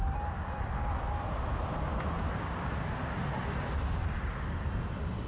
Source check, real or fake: real